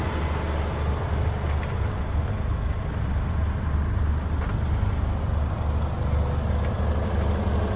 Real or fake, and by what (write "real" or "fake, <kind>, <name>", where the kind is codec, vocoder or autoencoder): real